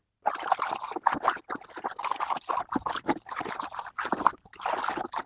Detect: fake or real real